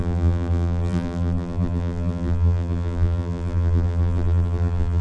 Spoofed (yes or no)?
yes